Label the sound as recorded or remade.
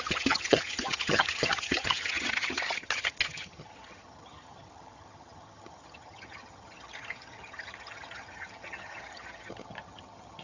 remade